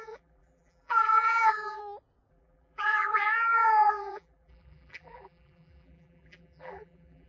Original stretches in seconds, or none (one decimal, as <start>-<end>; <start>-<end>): 1.8-2.3